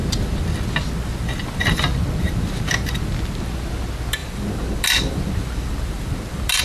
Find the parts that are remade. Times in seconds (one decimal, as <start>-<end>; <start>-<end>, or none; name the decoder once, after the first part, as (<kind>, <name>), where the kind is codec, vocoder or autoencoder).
4.2-6.6 (vocoder, BigVGAN v2)

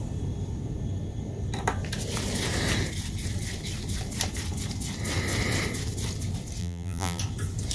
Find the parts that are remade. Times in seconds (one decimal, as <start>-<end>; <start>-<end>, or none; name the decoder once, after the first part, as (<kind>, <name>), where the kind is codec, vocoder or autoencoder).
6.6-7.2 (vocoder, BigVGAN v2)

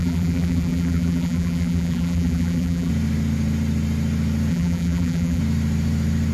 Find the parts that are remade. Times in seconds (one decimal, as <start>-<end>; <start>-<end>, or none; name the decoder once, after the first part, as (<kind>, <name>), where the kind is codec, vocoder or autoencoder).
0.0-2.9 (vocoder, BigVGAN v2); 4.5-5.4

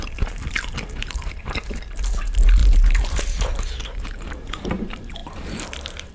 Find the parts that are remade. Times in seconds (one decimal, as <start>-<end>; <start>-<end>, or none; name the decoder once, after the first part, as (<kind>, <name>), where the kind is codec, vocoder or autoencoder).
0.0-6.1 (vocoder, BigVGAN v2)

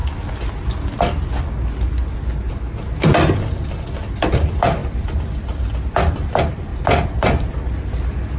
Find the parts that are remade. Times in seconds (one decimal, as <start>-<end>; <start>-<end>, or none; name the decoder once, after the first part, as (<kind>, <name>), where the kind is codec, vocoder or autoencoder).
2.5-6.7 (vocoder, BigVGAN v2); 7.5-8.4

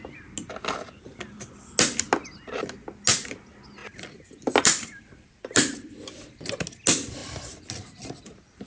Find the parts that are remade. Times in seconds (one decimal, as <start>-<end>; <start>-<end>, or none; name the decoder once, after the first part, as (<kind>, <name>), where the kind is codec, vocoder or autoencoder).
0.4-1.6 (vocoder, BigVGAN v2); 3.8-6.7; 7.2-8.7

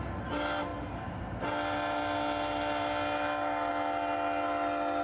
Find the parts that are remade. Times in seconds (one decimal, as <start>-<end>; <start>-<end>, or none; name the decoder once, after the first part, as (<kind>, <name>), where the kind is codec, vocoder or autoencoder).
none

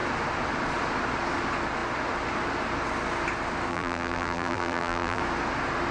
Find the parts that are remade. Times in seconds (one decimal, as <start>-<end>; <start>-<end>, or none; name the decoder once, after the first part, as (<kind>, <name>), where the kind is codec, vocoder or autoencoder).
3.7-5.2 (vocoder, BigVGAN v2)